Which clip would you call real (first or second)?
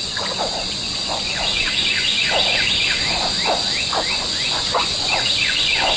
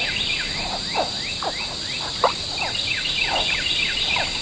second